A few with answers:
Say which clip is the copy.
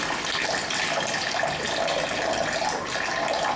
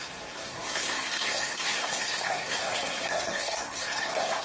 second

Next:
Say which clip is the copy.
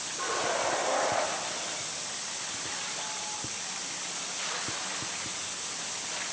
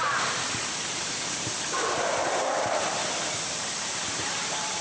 second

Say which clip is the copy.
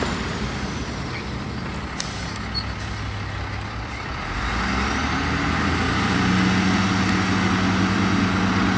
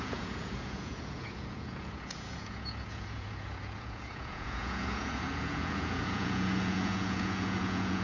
second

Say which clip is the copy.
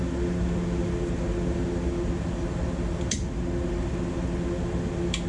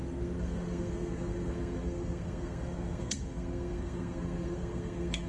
second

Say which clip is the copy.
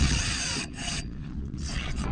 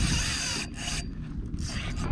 first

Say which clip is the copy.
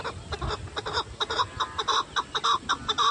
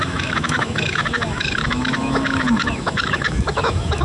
second